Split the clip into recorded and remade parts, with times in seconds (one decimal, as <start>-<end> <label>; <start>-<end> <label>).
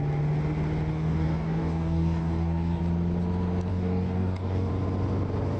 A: 0.0-0.9 recorded; 0.9-2.8 remade; 2.8-3.7 recorded; 3.7-4.7 remade; 4.7-5.6 recorded